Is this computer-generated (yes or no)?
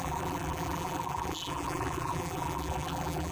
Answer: yes